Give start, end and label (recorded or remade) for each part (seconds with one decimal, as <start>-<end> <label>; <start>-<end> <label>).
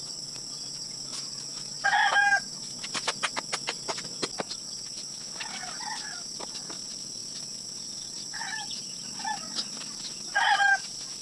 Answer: 0.0-11.2 recorded